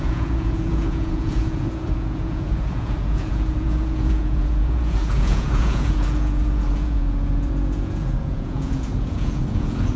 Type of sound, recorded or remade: remade